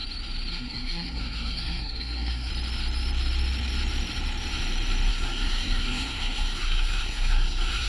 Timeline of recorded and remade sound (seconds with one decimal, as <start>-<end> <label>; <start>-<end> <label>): 0.0-0.5 recorded; 0.5-2.5 remade; 2.5-5.1 recorded; 5.1-7.9 remade